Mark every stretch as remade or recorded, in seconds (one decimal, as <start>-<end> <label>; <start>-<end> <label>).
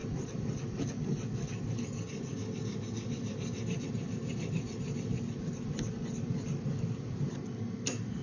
0.0-8.2 recorded